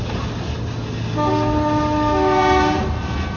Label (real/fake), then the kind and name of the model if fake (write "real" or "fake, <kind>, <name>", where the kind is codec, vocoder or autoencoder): real